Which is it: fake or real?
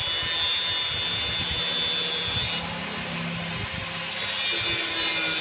real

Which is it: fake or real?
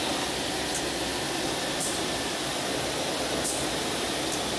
real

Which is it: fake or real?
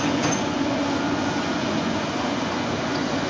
fake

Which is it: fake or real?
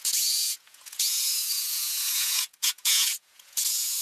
fake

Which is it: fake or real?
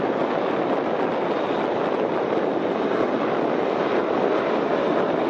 real